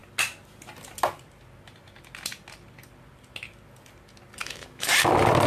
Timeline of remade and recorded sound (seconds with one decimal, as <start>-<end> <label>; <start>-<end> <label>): 0.0-4.4 recorded; 4.4-4.9 remade; 4.9-5.5 recorded